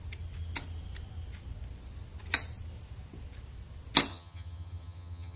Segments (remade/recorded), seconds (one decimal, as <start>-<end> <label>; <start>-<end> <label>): 0.0-4.1 recorded; 4.1-5.4 remade